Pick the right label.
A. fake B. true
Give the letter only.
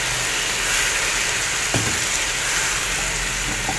B